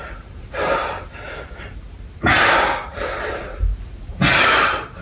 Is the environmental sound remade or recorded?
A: remade